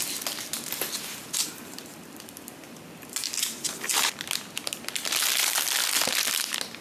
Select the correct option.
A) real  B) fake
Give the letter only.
A